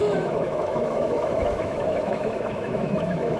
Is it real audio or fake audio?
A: fake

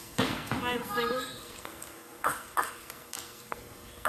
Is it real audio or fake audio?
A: fake